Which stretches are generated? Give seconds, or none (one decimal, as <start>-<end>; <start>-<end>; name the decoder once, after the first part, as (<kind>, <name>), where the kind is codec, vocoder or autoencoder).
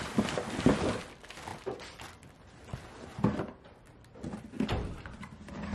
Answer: none